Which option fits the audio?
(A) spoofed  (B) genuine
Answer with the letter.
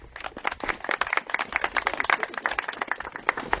B